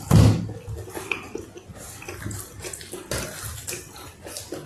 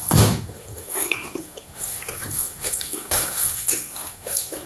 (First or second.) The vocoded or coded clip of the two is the second